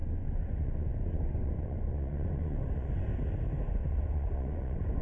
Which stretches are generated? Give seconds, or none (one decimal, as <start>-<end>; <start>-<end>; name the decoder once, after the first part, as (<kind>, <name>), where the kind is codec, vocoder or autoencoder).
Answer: 0.0-3.1 (vocoder, Vocos); 3.7-5.0